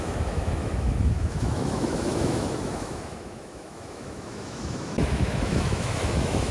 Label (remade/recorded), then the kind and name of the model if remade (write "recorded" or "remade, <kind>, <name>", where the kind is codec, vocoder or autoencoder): remade, autoencoder, DAC-VAE